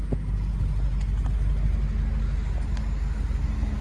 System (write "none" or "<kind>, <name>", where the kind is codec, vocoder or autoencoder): none